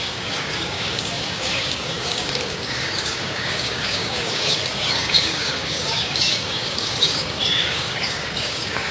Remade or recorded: remade